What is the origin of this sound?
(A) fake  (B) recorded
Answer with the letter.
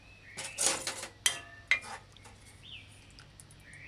B